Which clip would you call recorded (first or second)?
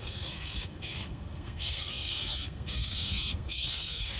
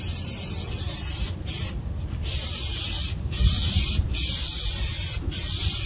second